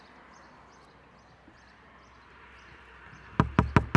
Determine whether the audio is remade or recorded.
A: recorded